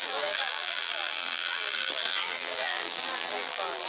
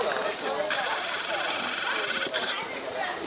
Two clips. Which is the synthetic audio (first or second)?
first